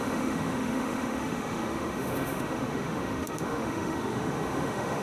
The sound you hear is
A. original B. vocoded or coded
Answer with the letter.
B